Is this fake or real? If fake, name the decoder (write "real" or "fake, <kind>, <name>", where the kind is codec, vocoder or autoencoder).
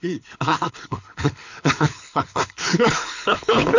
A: fake, codec, HILCodec